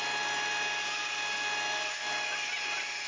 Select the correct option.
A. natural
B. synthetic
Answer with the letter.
A